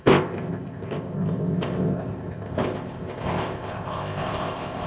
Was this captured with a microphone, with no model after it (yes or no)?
no